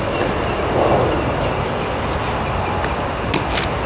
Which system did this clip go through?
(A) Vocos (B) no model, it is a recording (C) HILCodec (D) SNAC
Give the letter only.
B